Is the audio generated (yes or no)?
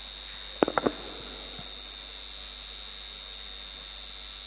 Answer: no